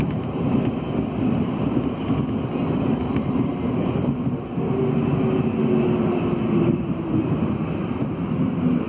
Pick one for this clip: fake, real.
real